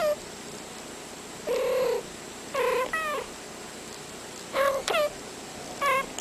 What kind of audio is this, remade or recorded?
recorded